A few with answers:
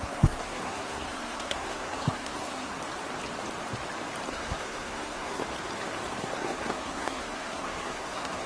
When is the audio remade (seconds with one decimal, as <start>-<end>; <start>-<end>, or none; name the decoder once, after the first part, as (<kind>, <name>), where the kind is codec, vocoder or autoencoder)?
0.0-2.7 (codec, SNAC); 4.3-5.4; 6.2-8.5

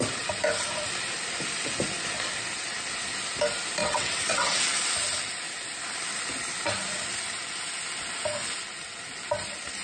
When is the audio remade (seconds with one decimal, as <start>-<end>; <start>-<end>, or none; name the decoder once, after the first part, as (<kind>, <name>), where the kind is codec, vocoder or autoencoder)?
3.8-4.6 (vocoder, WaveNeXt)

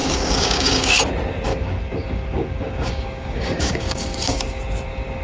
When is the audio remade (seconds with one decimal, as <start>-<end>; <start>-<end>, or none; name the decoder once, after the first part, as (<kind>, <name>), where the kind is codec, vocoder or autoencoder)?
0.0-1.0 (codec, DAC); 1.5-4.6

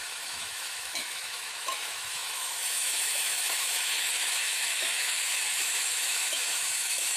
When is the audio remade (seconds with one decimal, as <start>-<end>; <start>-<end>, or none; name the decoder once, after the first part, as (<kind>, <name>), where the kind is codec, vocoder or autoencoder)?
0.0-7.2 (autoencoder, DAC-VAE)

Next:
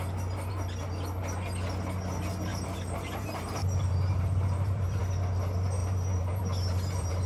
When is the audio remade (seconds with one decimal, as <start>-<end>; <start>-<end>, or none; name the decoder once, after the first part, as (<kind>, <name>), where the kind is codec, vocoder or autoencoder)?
2.5-5.0 (vocoder, BigVGAN v2); 5.8-7.3

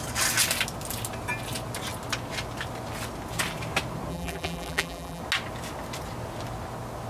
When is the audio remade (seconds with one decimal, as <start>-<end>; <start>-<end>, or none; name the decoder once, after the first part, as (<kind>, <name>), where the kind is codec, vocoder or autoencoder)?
4.1-5.2 (vocoder, BigVGAN v2)